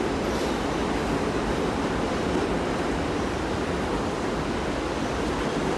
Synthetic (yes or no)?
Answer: no